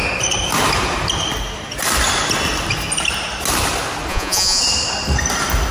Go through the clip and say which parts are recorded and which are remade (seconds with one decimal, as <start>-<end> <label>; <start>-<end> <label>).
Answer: 0.0-4.1 recorded; 4.1-4.6 remade; 4.6-5.7 recorded